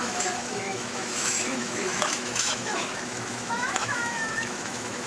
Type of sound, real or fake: fake